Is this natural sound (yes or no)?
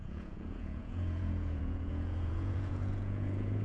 no